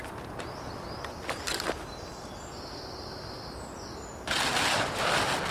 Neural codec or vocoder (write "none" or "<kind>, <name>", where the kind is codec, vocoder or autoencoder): none